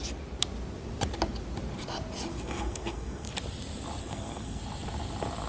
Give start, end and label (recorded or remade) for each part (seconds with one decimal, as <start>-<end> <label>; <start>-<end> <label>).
0.0-2.3 recorded; 2.3-3.3 remade; 3.3-4.0 recorded; 4.0-4.6 remade; 4.6-5.5 recorded